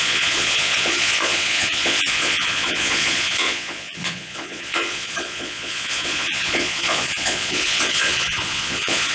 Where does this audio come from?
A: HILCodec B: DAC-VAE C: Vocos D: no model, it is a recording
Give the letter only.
C